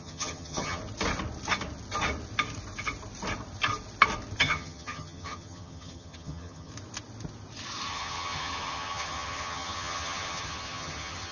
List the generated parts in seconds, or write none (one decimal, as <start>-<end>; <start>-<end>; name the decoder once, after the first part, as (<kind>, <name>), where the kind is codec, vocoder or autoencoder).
0.0-0.8 (vocoder, HiFi-GAN); 4.4-6.7; 7.9-11.3